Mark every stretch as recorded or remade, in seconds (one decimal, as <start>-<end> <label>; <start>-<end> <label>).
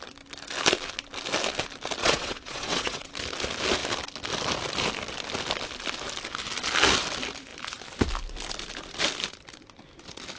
0.0-2.0 recorded; 2.0-3.1 remade; 3.1-10.4 recorded